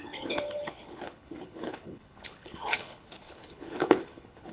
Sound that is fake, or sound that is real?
fake